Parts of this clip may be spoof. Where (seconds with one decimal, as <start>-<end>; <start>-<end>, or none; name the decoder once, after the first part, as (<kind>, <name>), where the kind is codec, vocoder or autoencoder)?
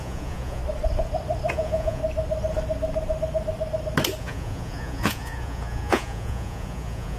0.0-0.6 (vocoder, Vocos); 1.5-2.0; 4.2-7.2